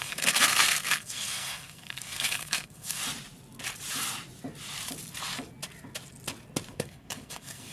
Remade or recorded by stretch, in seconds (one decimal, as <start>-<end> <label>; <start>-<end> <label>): 0.0-3.0 remade; 3.0-6.7 recorded; 6.7-7.7 remade